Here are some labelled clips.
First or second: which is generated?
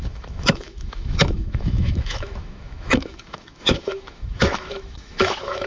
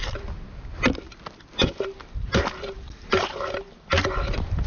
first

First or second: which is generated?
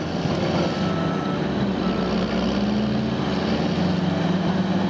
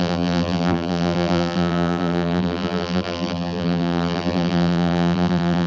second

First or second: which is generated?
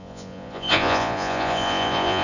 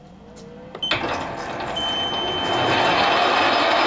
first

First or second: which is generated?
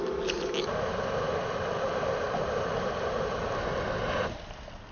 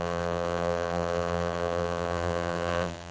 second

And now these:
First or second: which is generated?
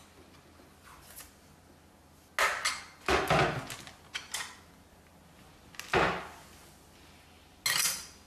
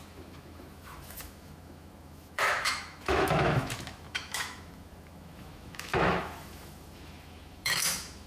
second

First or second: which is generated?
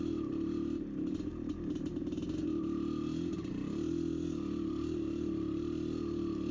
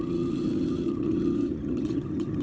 second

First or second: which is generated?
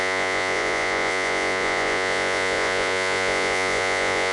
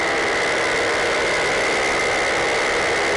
first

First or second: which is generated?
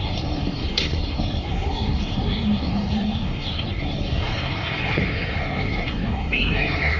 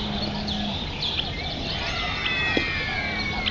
first